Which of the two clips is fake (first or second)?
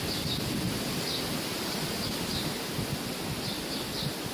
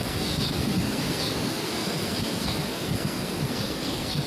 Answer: second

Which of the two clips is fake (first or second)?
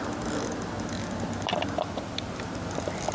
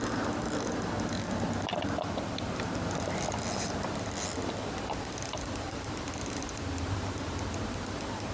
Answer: second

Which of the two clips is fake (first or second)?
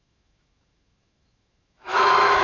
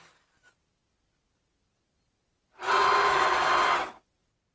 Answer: first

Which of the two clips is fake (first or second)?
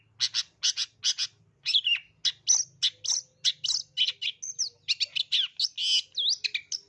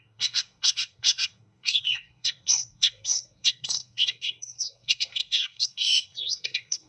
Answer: second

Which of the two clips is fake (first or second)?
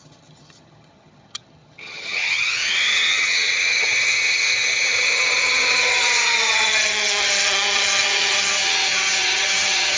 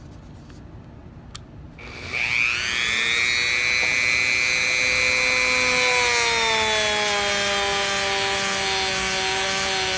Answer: first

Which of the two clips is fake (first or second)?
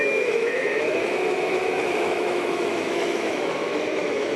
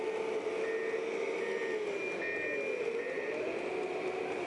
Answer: first